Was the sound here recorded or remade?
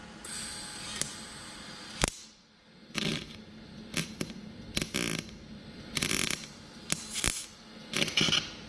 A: recorded